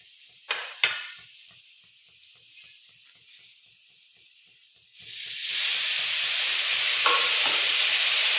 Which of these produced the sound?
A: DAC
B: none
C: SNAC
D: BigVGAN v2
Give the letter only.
D